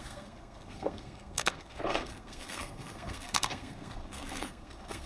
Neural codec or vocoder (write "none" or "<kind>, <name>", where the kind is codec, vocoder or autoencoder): codec, SNAC